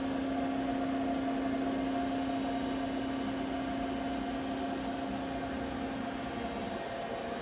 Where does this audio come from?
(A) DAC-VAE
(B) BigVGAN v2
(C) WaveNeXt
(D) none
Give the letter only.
D